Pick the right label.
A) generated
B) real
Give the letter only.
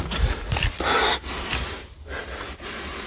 B